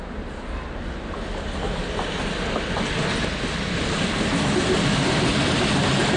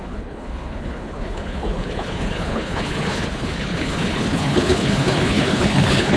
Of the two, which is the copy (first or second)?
second